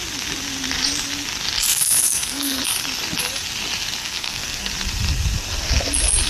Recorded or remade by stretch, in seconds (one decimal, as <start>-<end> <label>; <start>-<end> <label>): 0.0-1.7 recorded; 1.7-2.6 remade; 2.6-4.0 recorded; 4.0-4.7 remade; 4.7-6.3 recorded